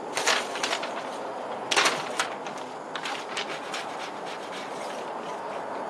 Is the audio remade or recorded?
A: recorded